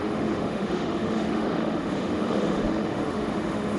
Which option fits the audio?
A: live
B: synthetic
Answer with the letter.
B